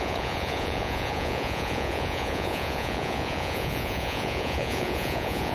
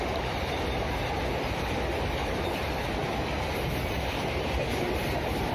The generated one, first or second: first